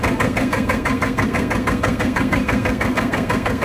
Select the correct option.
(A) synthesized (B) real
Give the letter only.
A